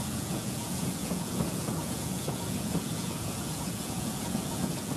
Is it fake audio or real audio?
fake